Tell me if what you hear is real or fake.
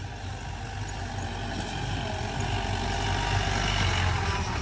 real